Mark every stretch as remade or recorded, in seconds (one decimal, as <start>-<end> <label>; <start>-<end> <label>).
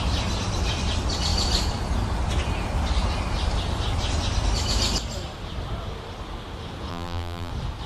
0.0-6.9 recorded; 6.9-7.5 remade; 7.5-7.9 recorded